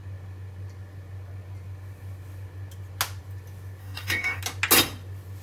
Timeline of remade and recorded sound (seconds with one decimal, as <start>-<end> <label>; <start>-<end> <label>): 0.0-3.8 recorded; 3.8-4.4 remade; 4.4-5.4 recorded